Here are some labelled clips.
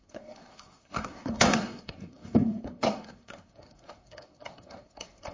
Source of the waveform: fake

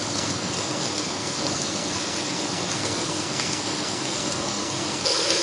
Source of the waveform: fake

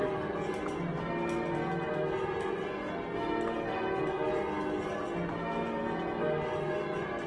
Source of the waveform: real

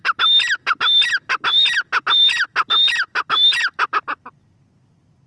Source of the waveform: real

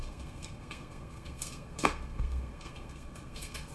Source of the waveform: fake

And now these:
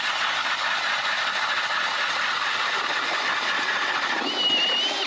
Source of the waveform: real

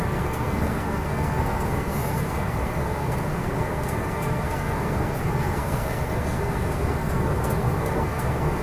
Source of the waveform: fake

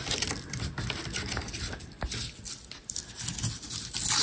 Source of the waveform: real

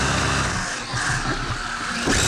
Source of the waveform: real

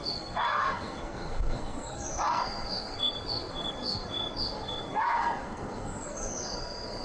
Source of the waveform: fake